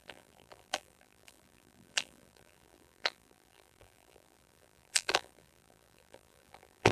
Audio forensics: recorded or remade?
remade